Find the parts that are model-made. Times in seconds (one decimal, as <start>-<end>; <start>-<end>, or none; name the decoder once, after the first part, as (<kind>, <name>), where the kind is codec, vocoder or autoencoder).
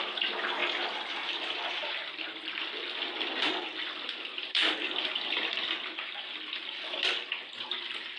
0.0-0.6 (vocoder, BigVGAN v2); 1.1-1.8; 2.6-8.2